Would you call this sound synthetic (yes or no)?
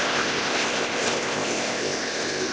yes